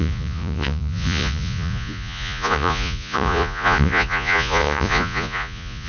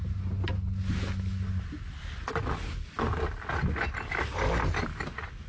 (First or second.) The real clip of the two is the second